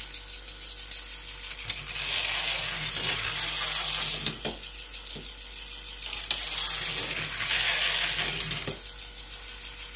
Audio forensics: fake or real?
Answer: real